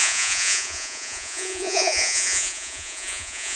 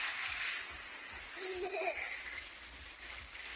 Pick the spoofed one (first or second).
first